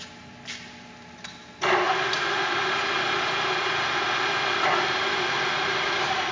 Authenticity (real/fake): real